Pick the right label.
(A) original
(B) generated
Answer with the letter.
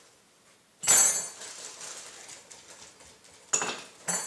A